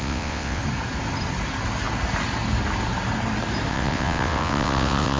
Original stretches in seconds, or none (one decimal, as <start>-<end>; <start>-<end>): 0.6-3.7